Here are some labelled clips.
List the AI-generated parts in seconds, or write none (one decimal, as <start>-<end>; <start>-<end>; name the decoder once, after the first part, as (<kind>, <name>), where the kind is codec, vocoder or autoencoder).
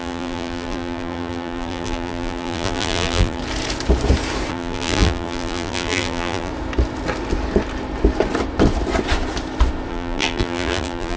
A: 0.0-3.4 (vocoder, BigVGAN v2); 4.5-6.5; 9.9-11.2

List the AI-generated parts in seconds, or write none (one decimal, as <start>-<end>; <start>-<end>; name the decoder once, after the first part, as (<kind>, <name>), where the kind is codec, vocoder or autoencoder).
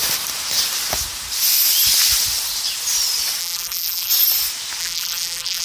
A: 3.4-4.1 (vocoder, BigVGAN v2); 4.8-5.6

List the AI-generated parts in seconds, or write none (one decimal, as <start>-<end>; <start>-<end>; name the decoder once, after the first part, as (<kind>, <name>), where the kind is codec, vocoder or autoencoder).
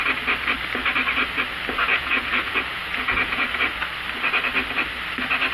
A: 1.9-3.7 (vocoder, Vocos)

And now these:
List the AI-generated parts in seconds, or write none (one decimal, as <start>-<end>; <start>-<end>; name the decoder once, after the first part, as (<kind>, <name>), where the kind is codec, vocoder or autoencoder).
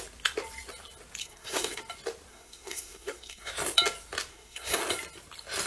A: 1.2-1.8 (codec, SNAC); 2.3-3.5; 4.3-4.8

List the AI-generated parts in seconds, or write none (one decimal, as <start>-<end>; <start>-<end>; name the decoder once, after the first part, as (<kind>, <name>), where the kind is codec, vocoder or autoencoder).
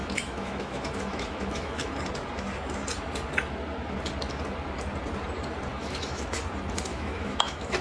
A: 0.0-1.9 (autoencoder, DAC-VAE); 5.7-6.3; 6.9-7.8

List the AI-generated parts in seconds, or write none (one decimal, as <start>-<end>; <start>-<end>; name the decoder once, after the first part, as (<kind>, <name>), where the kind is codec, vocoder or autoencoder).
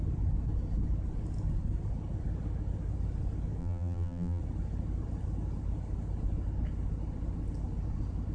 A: 3.6-4.4 (vocoder, BigVGAN v2)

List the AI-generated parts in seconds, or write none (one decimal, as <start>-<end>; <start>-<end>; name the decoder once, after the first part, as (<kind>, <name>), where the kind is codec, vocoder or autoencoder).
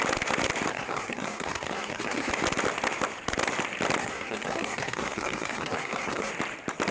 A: 0.7-2.3 (codec, SNAC); 4.0-6.3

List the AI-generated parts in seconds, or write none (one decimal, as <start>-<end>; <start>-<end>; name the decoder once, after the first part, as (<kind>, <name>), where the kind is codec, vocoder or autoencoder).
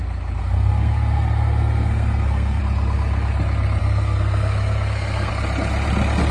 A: 0.4-2.6 (codec, SNAC); 3.8-5.3